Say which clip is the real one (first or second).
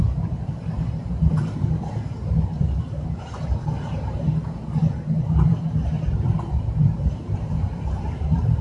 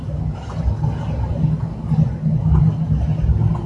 second